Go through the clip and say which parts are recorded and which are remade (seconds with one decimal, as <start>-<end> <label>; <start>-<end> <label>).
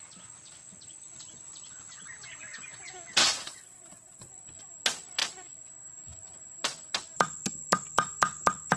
0.0-3.2 recorded; 3.2-4.3 remade; 4.3-8.8 recorded